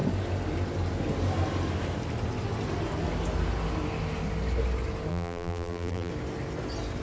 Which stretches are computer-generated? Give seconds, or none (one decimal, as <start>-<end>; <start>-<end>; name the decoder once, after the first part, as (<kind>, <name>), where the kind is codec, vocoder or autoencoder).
5.1-6.1 (vocoder, BigVGAN v2)